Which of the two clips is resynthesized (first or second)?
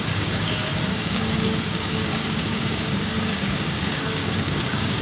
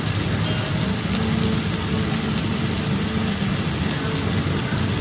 first